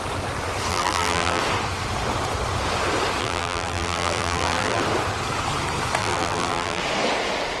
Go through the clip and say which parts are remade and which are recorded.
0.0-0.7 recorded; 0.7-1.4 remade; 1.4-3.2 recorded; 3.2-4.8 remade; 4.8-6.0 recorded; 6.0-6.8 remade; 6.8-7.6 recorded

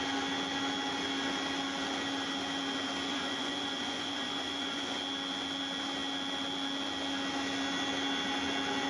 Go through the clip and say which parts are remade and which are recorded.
0.0-3.1 recorded; 3.1-5.0 remade; 5.0-8.9 recorded

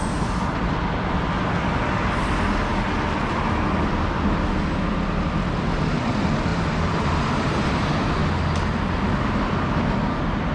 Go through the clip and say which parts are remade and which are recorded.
0.0-6.5 recorded; 6.5-8.1 remade; 8.1-10.5 recorded

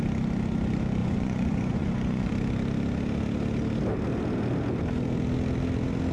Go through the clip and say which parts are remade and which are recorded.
0.0-1.0 recorded; 1.0-2.3 remade; 2.3-6.1 recorded

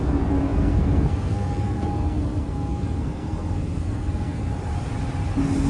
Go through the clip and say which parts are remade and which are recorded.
0.0-4.4 remade; 4.4-5.7 recorded

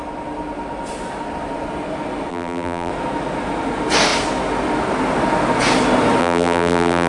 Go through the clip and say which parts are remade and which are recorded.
0.0-2.3 recorded; 2.3-2.9 remade; 2.9-6.2 recorded; 6.2-7.1 remade

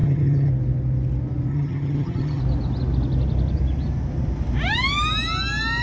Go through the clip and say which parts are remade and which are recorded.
0.0-0.5 remade; 0.5-1.5 recorded; 1.5-2.4 remade; 2.4-5.8 recorded